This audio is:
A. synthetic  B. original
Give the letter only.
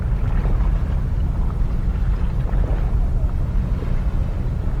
B